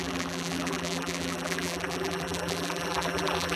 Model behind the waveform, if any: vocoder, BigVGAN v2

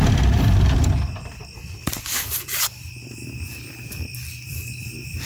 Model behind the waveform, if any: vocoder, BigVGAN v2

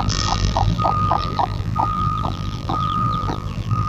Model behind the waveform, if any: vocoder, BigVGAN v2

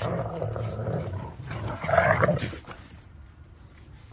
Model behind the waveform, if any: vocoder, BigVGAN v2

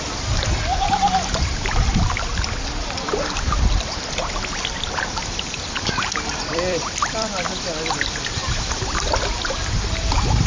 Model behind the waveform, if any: vocoder, BigVGAN v2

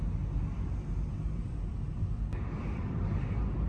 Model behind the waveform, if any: none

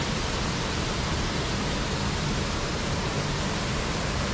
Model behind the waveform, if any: vocoder, BigVGAN v2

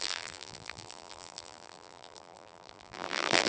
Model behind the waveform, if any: vocoder, BigVGAN v2